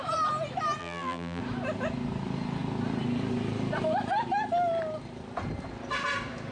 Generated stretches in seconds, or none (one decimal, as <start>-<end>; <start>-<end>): 0.8-1.4

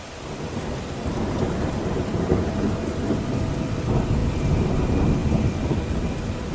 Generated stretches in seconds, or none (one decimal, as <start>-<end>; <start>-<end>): 1.1-3.2; 4.2-4.8; 5.2-6.5

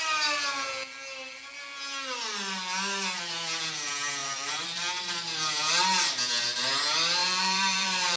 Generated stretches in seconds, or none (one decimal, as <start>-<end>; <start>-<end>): 4.2-4.9; 7.2-8.2

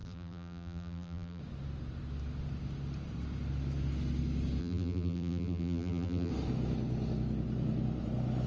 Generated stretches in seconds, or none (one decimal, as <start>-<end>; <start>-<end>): 0.0-1.4; 4.6-6.3